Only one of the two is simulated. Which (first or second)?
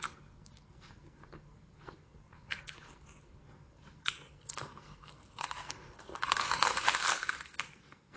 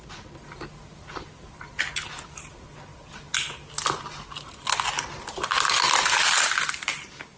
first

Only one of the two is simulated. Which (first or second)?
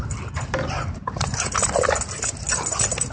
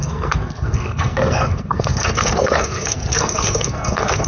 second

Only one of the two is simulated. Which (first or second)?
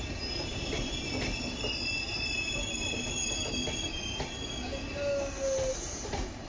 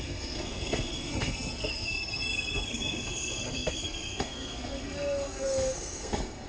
second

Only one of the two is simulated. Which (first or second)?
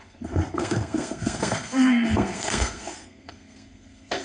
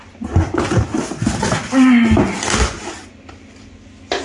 first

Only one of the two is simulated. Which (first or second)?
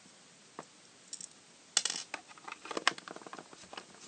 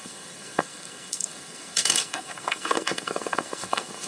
second